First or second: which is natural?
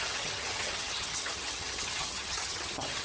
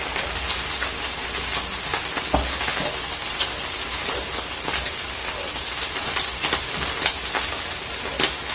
second